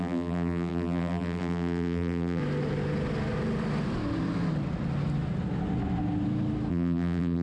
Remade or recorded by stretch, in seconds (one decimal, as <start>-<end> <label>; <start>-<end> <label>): 0.0-2.4 remade; 2.4-6.7 recorded; 6.7-7.4 remade